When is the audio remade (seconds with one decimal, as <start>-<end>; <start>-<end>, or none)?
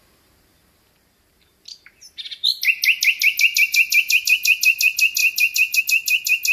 3.6-4.2; 5.2-5.8